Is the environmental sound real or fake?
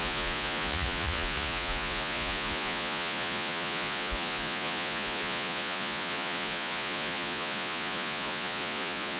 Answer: fake